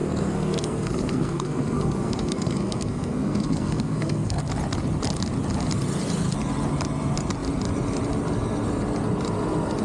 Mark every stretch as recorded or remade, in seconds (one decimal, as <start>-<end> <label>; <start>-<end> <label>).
0.0-4.4 remade; 4.4-9.8 recorded